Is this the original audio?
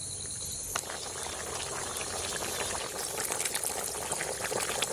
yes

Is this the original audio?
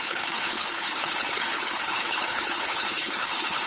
no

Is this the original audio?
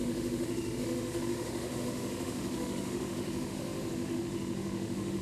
no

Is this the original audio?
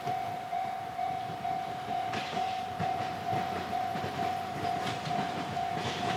no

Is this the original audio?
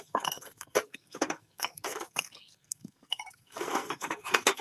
no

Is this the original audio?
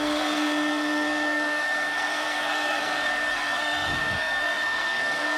no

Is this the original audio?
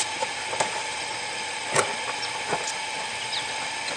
yes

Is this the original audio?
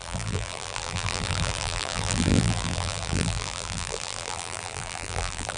no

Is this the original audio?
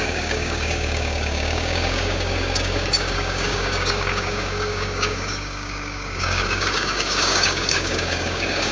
no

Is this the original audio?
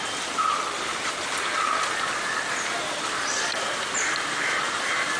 yes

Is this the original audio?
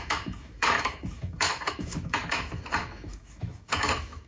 no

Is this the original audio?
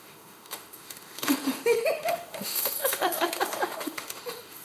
no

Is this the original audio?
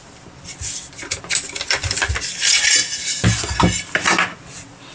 yes